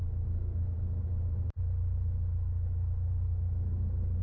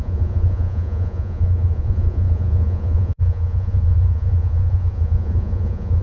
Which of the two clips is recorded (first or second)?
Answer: first